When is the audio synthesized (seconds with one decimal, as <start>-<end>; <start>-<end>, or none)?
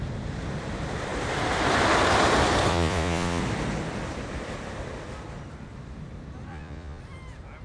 2.7-3.4; 6.5-7.0